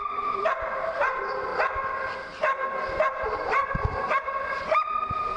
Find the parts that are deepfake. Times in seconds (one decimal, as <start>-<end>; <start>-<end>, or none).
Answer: 0.0-1.5; 3.2-3.6; 4.2-5.4